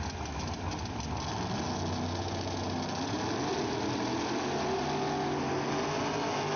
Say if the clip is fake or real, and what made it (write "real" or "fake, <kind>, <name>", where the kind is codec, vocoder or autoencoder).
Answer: real